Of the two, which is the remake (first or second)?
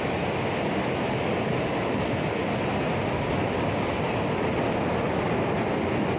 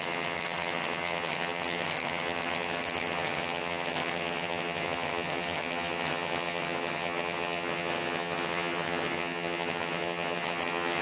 second